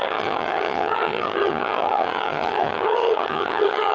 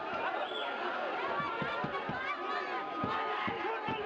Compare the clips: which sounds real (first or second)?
second